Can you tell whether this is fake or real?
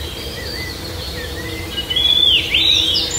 real